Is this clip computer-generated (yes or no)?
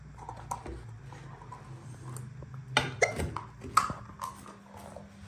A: no